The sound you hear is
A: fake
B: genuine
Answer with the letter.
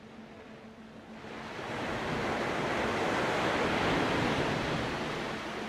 B